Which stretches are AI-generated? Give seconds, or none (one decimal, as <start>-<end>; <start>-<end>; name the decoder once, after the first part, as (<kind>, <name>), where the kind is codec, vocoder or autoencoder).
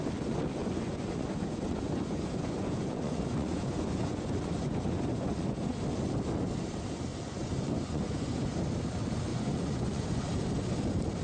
0.6-5.8 (vocoder, Vocos); 7.1-8.5; 9.3-10.2